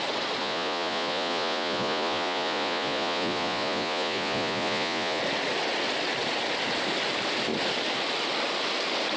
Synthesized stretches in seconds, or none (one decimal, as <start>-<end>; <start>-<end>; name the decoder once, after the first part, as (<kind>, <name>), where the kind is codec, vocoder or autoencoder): 0.4-5.2 (vocoder, Vocos)